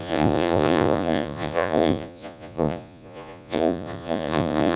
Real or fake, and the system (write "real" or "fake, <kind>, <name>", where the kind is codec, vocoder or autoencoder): fake, vocoder, Vocos